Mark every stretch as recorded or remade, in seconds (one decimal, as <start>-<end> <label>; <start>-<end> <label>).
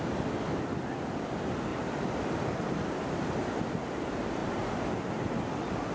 0.0-1.7 recorded; 1.7-2.5 remade; 2.5-5.9 recorded